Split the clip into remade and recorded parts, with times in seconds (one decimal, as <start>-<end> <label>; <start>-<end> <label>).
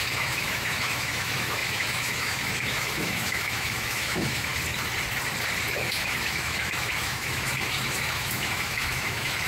0.0-4.5 remade; 4.5-5.6 recorded; 5.6-9.5 remade